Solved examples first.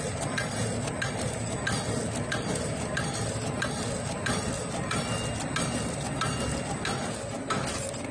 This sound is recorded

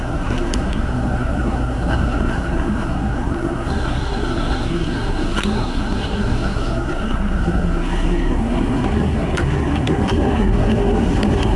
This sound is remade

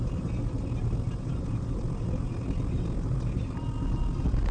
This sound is recorded